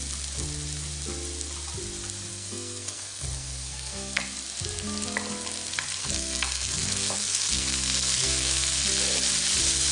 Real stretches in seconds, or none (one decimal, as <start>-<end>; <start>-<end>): 0.0-2.3; 4.2-6.0; 8.8-9.9